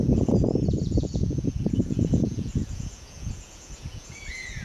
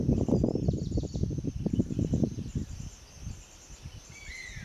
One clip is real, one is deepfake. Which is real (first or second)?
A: second